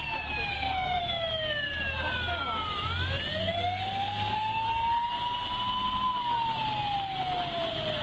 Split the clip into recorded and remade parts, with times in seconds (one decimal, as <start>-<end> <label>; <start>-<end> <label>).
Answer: 0.0-0.5 recorded; 0.5-1.0 remade; 1.0-3.4 recorded; 3.4-5.1 remade; 5.1-8.0 recorded